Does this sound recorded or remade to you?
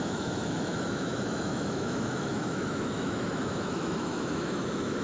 remade